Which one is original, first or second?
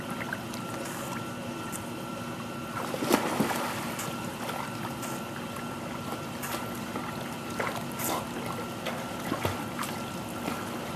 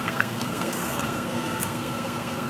first